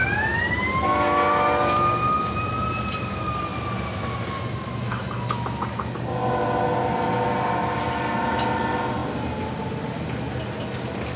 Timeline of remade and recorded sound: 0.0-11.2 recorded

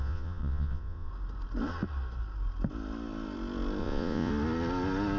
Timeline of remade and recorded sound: 0.0-1.1 remade; 1.1-3.8 recorded; 3.8-4.3 remade; 4.3-5.2 recorded

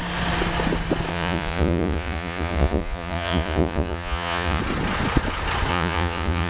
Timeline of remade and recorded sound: 0.0-1.1 recorded; 1.1-4.6 remade; 4.6-5.7 recorded; 5.7-6.5 remade

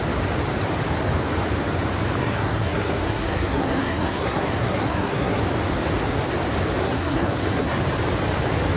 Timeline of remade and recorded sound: 0.0-2.2 recorded; 2.2-5.4 remade; 5.4-6.8 recorded; 6.8-7.8 remade; 7.8-8.8 recorded

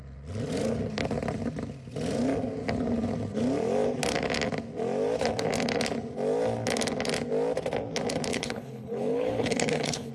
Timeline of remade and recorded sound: 0.0-8.3 recorded; 8.3-10.1 remade

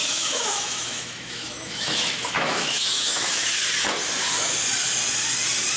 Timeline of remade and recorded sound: 0.0-3.5 remade; 3.5-5.8 recorded